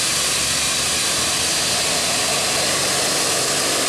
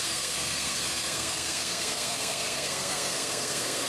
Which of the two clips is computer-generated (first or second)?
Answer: second